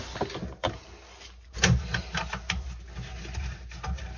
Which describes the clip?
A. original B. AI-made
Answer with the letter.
A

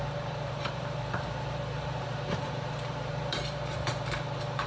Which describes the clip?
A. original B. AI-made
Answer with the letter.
B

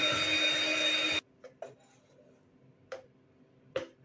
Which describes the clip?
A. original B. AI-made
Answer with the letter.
A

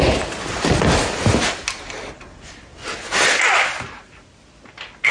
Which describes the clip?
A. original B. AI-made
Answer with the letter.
A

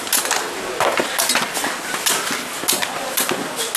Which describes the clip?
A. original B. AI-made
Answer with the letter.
A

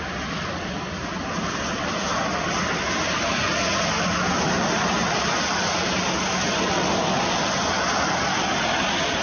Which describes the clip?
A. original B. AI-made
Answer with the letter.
A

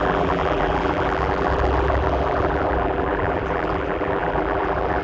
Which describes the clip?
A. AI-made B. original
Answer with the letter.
A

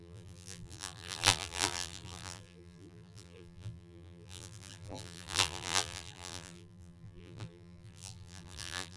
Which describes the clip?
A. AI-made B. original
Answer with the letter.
A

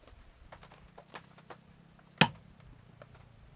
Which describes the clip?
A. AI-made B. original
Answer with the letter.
B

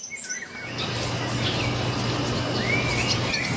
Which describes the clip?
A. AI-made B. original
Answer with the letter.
B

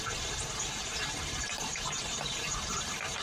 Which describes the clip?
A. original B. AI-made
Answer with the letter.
B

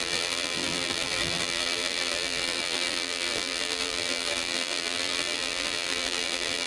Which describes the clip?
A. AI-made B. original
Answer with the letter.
A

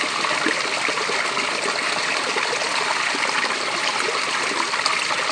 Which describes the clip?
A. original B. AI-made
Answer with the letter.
A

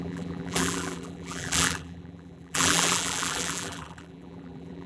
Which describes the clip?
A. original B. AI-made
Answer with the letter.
B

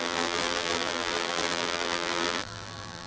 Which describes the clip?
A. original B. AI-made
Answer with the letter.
B